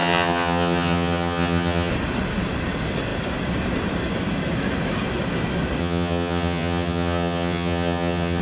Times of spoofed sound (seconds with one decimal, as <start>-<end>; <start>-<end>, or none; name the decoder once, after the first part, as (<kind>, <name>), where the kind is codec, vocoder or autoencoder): 0.0-1.9 (vocoder, HiFi-GAN); 5.8-8.4

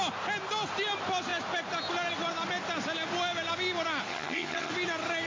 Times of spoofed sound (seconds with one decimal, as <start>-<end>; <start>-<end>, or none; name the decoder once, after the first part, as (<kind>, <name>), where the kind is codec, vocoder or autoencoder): 4.1-4.7 (vocoder, HiFi-GAN)

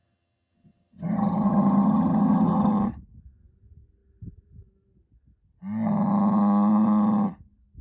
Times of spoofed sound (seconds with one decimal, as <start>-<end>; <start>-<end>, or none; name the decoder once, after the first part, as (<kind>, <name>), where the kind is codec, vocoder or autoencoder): 0.0-2.7 (vocoder, HiFi-GAN)

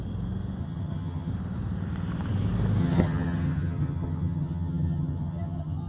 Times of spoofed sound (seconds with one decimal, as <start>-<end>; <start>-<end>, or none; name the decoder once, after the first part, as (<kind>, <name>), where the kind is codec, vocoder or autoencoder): 0.6-1.3 (vocoder, HiFi-GAN); 2.8-5.9

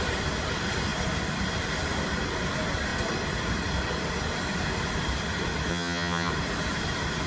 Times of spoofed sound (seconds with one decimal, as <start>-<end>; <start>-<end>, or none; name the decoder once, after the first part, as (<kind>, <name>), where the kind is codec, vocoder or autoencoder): 5.7-6.3 (vocoder, HiFi-GAN)

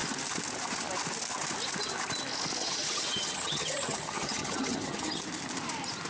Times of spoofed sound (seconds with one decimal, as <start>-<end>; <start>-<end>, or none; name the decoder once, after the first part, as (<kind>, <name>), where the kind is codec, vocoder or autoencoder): 2.6-5.2 (vocoder, HiFi-GAN)

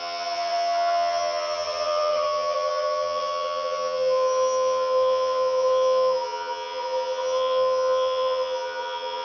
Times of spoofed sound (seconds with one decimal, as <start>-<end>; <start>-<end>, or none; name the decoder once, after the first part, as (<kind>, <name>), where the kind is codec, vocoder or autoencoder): 0.0-9.2 (vocoder, HiFi-GAN)